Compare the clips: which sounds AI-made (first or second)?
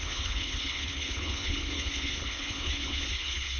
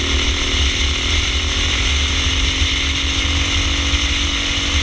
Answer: first